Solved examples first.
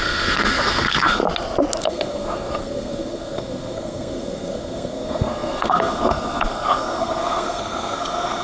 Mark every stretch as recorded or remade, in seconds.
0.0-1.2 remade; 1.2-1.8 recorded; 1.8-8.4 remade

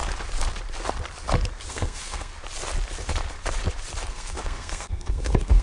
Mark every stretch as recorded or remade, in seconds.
0.0-1.7 recorded; 1.7-2.3 remade; 2.3-4.1 recorded; 4.1-5.6 remade

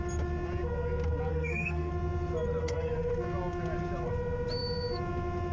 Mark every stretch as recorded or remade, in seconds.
0.0-1.3 recorded; 1.3-1.9 remade; 1.9-2.6 recorded; 2.6-3.1 remade; 3.1-5.5 recorded

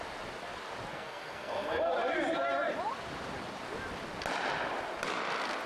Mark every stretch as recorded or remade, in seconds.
0.0-0.9 recorded; 0.9-1.9 remade; 1.9-5.7 recorded

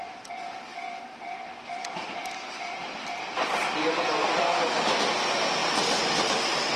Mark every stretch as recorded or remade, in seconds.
0.0-6.8 recorded